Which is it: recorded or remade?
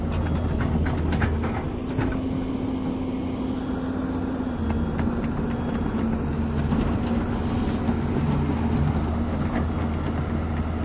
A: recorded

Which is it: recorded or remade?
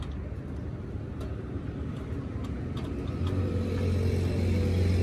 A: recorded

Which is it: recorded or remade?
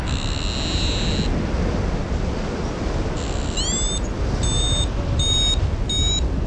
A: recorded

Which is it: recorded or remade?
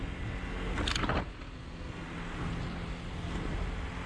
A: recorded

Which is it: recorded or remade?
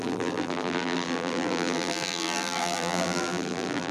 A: remade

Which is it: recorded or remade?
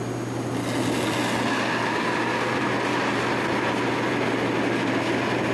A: recorded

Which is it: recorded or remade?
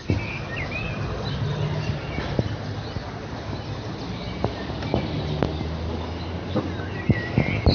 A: recorded